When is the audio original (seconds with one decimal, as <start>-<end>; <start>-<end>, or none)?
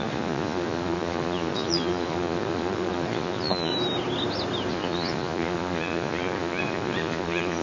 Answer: 3.7-4.7